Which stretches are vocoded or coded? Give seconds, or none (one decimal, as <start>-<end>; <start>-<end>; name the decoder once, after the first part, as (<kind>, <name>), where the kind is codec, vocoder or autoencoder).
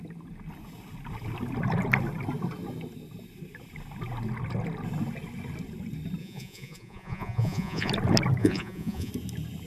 6.2-7.9 (vocoder, Vocos); 8.4-9.1